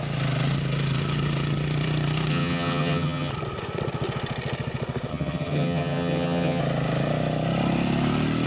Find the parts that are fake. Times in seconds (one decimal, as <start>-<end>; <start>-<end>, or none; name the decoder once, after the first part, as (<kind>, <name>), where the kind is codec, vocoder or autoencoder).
2.3-3.3 (vocoder, HiFi-GAN); 5.1-6.6